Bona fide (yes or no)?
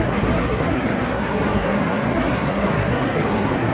no